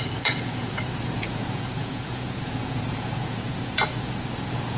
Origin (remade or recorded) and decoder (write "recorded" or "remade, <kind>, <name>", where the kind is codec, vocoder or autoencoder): remade, vocoder, Vocos